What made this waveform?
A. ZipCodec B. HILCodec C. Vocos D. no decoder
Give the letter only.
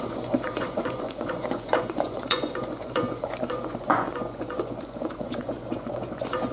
C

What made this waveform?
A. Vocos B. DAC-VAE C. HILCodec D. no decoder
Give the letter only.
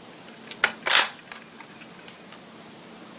D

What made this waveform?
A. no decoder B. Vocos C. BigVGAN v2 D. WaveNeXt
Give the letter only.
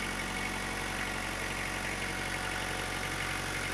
A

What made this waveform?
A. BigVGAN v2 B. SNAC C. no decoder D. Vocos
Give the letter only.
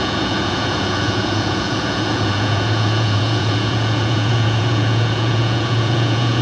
D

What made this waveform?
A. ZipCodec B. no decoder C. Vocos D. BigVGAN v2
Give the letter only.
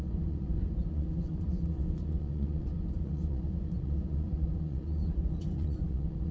C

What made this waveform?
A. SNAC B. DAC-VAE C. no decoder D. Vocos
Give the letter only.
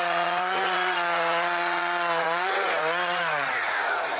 D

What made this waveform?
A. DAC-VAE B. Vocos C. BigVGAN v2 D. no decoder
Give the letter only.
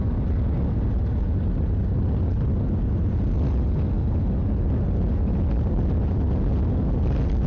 D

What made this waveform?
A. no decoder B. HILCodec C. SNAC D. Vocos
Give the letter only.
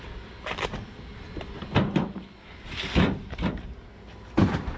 A